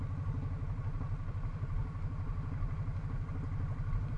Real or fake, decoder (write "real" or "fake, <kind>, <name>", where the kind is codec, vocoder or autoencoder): real